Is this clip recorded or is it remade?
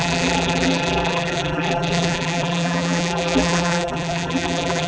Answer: remade